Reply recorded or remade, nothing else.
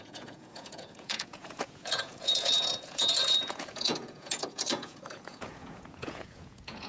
remade